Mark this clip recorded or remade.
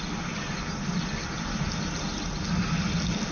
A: recorded